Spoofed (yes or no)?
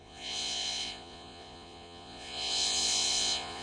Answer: yes